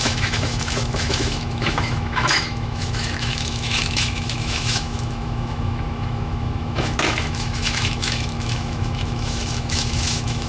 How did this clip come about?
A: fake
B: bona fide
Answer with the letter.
A